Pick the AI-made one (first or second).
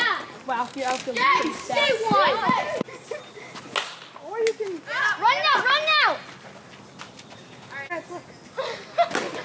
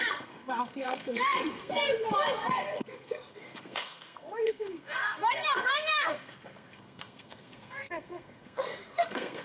second